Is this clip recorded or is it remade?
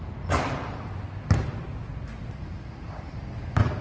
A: recorded